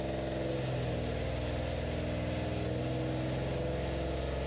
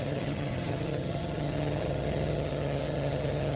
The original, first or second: first